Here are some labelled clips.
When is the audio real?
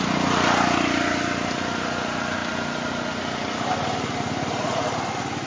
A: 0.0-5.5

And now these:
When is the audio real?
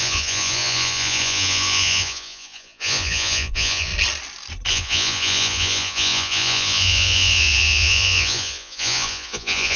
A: 3.9-4.7